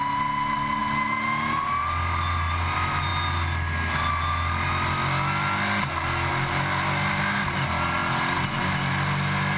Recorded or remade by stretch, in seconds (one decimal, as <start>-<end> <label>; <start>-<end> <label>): 0.0-9.6 recorded